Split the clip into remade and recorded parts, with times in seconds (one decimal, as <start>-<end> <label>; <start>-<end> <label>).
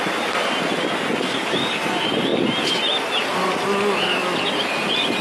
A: 0.0-5.2 recorded